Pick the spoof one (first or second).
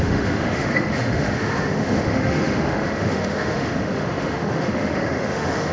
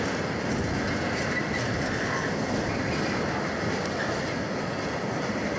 first